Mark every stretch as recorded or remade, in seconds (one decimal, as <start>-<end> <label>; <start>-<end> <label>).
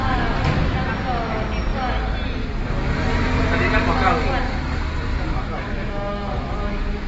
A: 0.0-5.1 recorded; 5.1-7.1 remade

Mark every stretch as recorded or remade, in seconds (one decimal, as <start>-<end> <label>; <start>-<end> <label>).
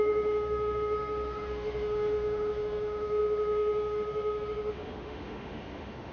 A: 0.0-6.1 remade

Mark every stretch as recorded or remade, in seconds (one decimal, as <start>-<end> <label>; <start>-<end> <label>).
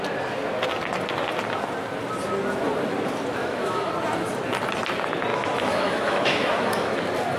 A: 0.0-3.4 recorded; 3.4-3.9 remade; 3.9-5.3 recorded; 5.3-7.0 remade; 7.0-7.4 recorded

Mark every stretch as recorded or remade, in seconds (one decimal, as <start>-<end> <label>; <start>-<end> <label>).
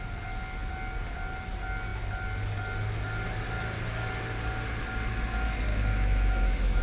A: 0.0-5.7 recorded; 5.7-6.8 remade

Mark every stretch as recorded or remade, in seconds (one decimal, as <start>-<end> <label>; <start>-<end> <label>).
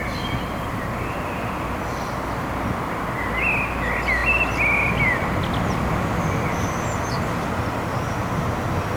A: 0.0-9.0 recorded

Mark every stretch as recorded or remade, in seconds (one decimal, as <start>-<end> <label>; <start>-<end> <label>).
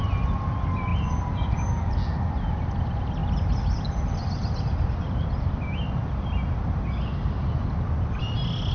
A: 0.0-8.7 recorded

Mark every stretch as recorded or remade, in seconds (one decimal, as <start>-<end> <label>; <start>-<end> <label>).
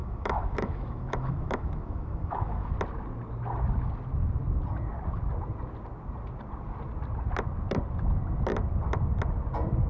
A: 0.0-2.7 remade; 2.7-9.9 recorded